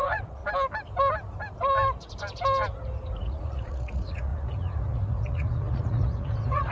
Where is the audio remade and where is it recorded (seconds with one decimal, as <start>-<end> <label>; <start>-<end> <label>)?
0.0-0.4 remade; 0.4-3.2 recorded; 3.2-6.7 remade